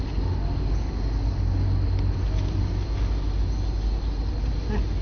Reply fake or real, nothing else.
real